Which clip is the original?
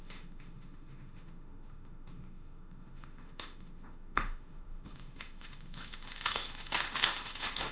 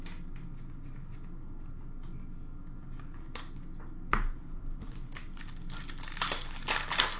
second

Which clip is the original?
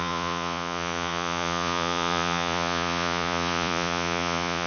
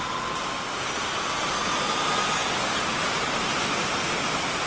second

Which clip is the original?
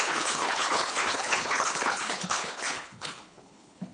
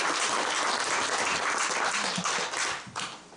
second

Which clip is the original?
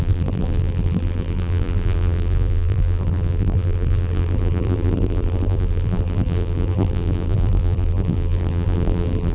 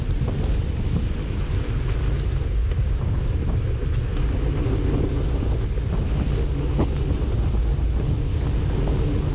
second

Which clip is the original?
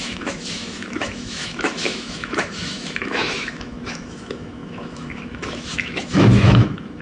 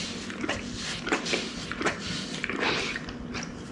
second